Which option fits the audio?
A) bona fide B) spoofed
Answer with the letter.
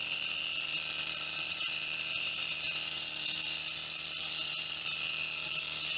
B